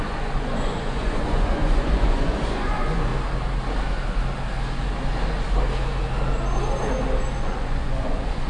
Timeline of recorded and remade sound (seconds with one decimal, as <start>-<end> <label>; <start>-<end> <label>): 0.0-3.1 remade; 3.1-7.4 recorded; 7.4-8.5 remade